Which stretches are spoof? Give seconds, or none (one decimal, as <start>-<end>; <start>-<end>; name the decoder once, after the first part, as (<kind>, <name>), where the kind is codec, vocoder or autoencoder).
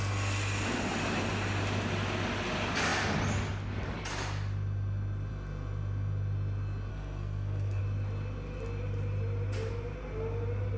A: 6.9-7.8 (codec, SNAC)